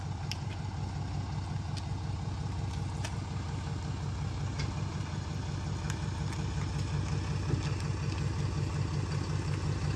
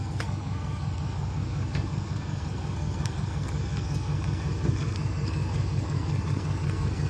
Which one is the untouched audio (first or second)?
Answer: first